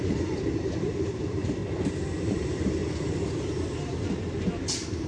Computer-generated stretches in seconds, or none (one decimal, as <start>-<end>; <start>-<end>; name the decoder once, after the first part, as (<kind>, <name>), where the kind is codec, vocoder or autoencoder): 0.0-1.6 (vocoder, BigVGAN v2); 2.3-2.8